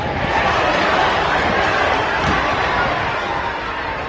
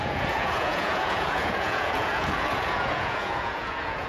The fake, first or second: second